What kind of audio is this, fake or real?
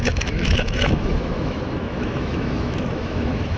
fake